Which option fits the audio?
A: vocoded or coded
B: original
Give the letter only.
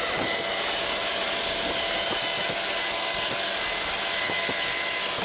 B